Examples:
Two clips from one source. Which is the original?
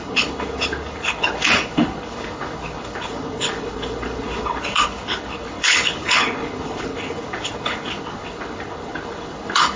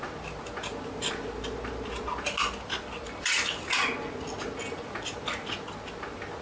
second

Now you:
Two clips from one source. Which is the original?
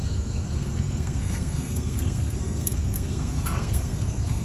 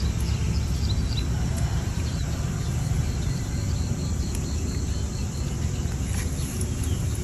second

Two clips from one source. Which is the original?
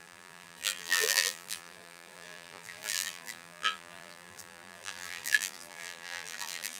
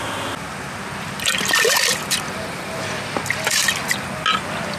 second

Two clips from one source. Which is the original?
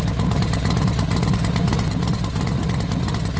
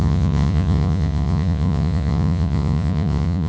first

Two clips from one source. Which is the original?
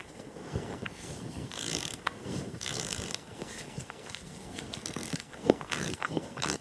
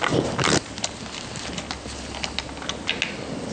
second